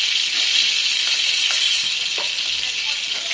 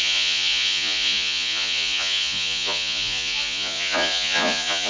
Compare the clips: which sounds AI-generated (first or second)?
second